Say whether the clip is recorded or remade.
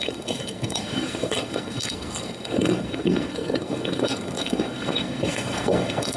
remade